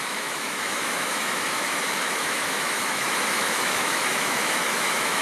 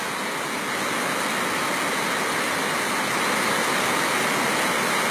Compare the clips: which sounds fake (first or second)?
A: first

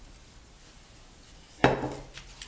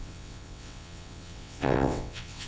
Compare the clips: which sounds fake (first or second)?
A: second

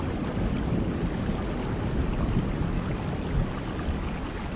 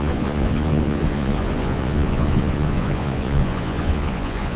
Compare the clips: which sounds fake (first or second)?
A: second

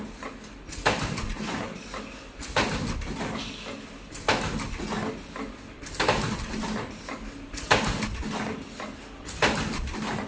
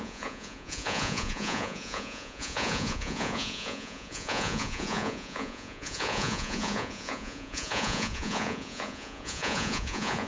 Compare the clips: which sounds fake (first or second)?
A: second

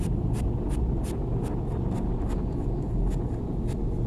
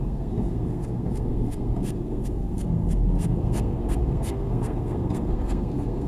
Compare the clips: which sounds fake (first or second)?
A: second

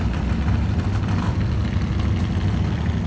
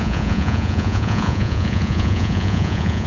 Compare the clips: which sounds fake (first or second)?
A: second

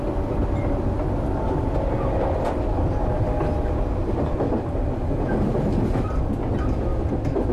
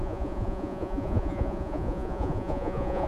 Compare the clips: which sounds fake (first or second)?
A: second